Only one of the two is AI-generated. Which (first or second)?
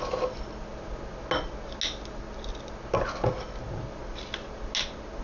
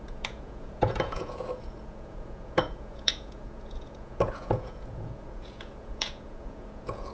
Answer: second